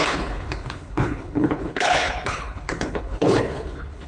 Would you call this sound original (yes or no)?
no